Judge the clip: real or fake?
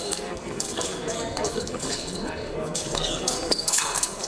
fake